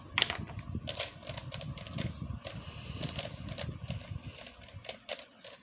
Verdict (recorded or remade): recorded